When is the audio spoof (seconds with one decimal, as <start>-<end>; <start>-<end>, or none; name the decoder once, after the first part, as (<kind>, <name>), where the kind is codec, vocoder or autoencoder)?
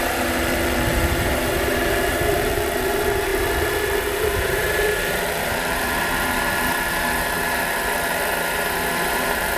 0.0-8.3 (vocoder, BigVGAN v2); 8.9-9.6